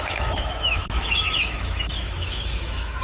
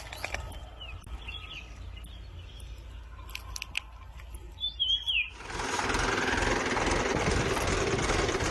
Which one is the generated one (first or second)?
first